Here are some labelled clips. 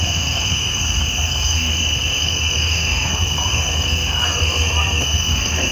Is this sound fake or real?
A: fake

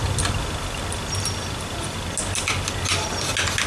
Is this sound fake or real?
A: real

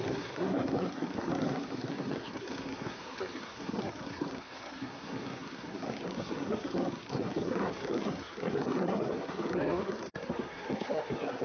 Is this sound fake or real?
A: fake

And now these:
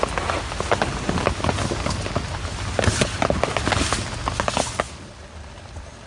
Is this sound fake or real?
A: real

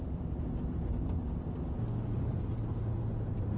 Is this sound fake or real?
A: real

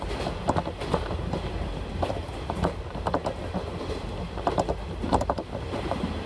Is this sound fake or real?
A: real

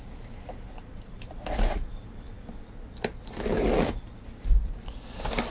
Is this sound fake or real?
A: real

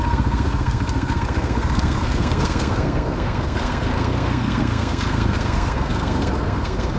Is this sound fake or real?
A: fake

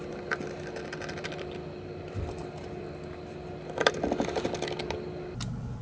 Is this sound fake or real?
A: real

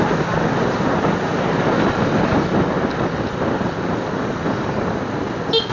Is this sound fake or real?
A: real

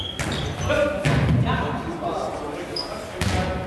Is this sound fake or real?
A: real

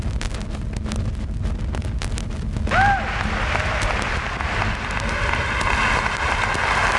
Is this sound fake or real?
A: real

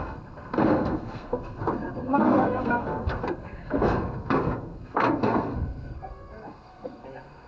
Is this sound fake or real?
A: fake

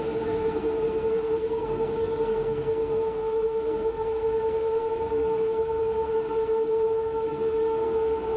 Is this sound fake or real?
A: fake